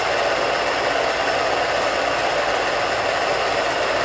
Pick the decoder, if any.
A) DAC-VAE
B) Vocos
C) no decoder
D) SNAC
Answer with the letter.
C